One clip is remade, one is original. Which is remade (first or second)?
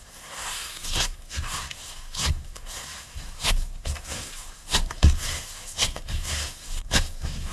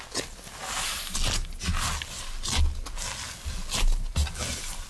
first